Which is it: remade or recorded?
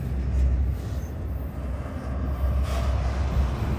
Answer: recorded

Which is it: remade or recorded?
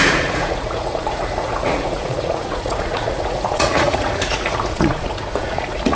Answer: remade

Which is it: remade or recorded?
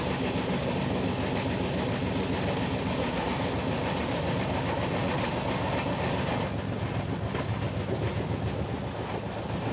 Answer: recorded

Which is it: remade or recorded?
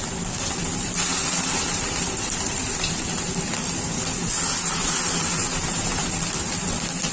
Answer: recorded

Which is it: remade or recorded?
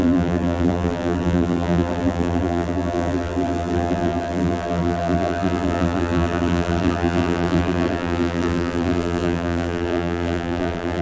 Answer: remade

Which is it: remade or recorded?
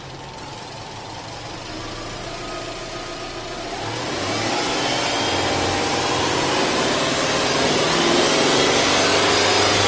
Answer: recorded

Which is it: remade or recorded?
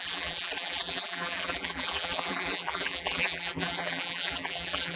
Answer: remade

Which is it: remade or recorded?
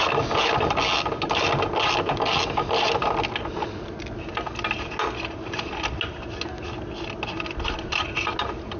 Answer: recorded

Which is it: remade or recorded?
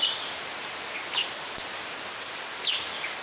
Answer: recorded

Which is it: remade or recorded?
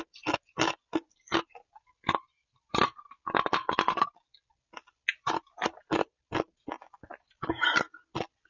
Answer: recorded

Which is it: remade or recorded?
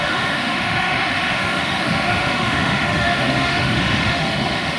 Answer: remade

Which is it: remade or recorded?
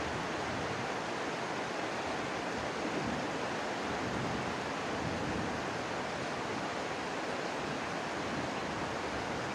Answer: recorded